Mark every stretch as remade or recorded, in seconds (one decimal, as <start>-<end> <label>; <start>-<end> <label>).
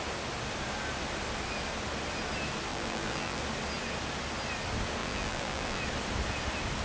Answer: 0.0-2.7 recorded; 2.7-3.4 remade; 3.4-5.0 recorded; 5.0-5.8 remade; 5.8-6.8 recorded